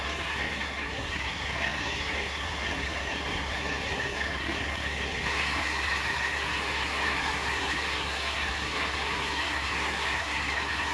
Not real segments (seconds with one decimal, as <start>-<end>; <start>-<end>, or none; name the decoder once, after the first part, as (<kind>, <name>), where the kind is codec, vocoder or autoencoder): 0.0-10.9 (codec, SNAC)